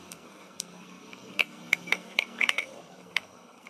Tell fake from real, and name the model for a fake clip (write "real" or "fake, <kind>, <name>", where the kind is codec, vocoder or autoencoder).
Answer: fake, codec, SNAC